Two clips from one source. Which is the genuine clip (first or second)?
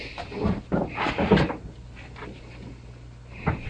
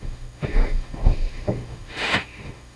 first